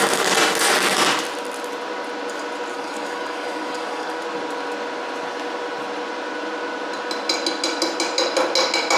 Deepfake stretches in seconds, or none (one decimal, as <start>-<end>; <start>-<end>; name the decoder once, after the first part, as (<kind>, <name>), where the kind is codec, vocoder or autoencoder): 2.7-4.2 (codec, DAC)